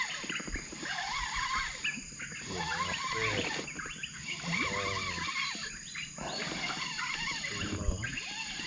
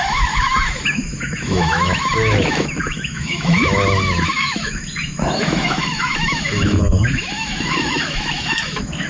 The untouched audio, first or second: first